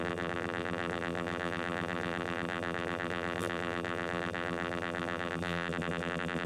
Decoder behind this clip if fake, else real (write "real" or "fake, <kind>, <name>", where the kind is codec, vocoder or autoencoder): fake, vocoder, BigVGAN v2